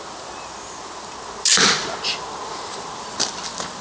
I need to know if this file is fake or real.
real